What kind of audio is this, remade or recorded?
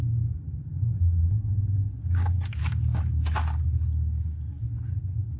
recorded